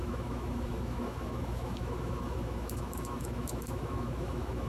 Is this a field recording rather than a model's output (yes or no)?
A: no